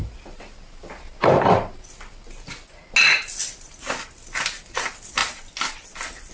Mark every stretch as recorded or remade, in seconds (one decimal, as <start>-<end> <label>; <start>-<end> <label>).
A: 0.0-6.3 recorded